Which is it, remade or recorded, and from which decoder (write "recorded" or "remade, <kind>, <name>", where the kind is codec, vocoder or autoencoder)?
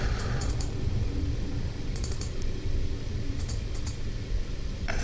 remade, vocoder, Vocos